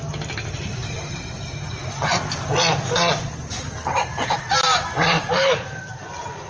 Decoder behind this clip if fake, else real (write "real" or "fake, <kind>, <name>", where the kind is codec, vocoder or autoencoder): real